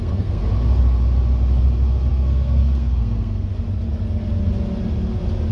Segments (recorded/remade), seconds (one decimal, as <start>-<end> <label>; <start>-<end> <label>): 0.0-0.4 remade; 0.4-2.1 recorded; 2.1-3.5 remade; 3.5-5.5 recorded